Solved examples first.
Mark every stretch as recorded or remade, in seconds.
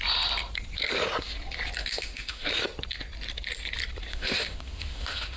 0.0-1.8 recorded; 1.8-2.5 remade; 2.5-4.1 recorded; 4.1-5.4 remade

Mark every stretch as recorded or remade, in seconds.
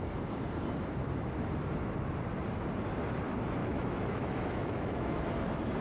0.0-3.6 recorded; 3.6-5.3 remade; 5.3-5.8 recorded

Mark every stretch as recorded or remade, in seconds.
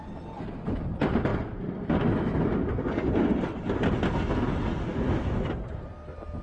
0.0-4.9 recorded; 4.9-5.5 remade; 5.5-6.4 recorded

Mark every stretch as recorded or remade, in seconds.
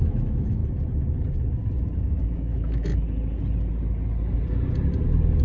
0.0-0.6 remade; 0.6-2.0 recorded; 2.0-2.9 remade; 2.9-5.4 recorded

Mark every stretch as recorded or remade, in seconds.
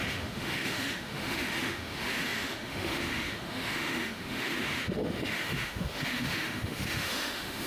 0.0-7.7 remade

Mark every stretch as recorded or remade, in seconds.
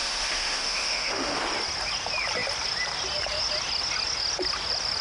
0.0-1.4 remade; 1.4-5.0 recorded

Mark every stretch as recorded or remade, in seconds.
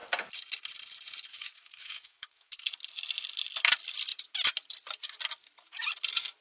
0.0-1.3 recorded; 1.3-2.7 remade; 2.7-6.4 recorded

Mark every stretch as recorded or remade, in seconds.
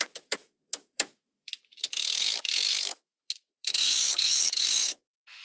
0.0-5.4 remade